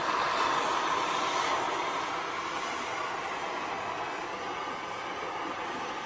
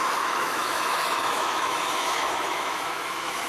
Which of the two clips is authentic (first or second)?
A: first